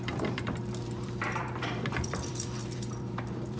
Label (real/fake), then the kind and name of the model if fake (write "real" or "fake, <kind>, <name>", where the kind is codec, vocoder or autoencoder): fake, vocoder, BigVGAN v2